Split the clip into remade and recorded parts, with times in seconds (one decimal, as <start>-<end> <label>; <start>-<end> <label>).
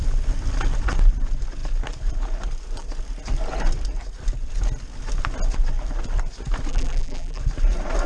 0.0-6.7 recorded; 6.7-7.4 remade; 7.4-8.1 recorded